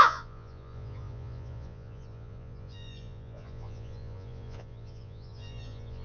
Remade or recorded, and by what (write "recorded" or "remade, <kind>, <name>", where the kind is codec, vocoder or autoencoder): remade, vocoder, Vocos